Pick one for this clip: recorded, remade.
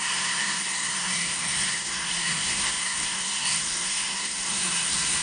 remade